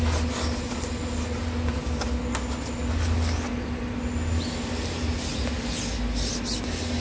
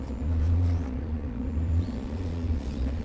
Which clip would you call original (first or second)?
first